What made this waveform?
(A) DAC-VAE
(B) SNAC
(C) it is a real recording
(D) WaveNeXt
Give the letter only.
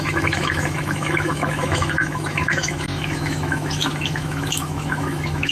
A